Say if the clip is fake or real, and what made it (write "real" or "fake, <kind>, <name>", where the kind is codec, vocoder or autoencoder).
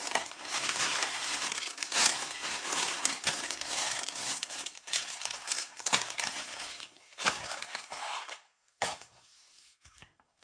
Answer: fake, codec, SNAC